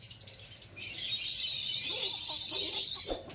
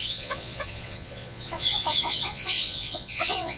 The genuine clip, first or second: first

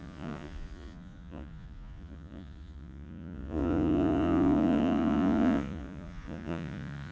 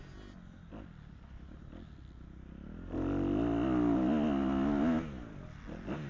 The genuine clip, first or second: second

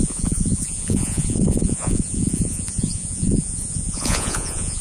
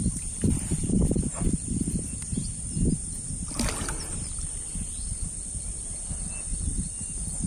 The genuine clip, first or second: second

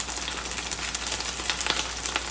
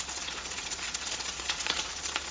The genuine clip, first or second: first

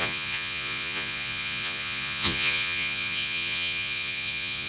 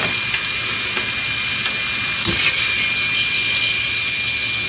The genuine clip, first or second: second